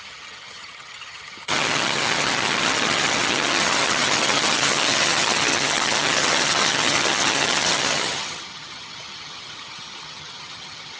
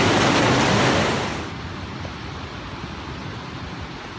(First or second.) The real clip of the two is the second